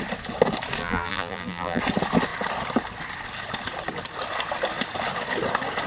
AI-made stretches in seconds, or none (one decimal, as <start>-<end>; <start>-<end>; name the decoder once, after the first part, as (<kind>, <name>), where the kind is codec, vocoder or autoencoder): 0.8-1.8 (vocoder, BigVGAN v2)